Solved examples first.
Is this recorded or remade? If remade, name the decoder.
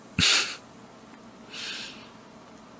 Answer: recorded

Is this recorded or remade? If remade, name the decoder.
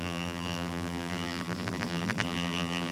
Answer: remade, vocoder, BigVGAN v2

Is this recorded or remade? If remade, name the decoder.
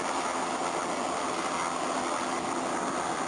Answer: recorded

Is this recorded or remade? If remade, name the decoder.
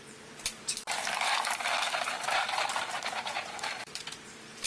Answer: remade, vocoder, BigVGAN v2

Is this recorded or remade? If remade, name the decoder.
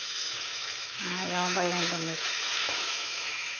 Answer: remade, autoencoder, DAC-VAE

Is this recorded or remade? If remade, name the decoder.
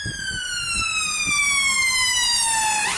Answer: remade, vocoder, BigVGAN v2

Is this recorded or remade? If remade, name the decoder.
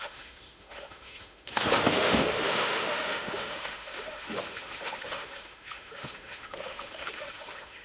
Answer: remade, autoencoder, DAC-VAE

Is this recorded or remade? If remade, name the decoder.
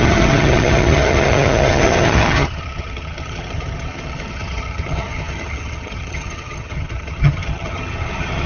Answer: remade, vocoder, HiFi-GAN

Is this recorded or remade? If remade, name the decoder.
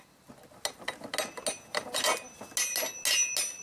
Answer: recorded